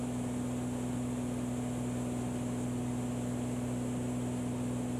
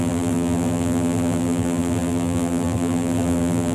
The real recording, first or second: first